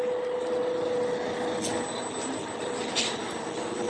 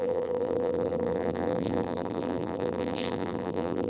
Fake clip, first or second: second